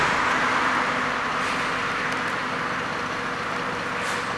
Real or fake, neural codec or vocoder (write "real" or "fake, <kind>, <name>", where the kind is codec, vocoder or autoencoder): real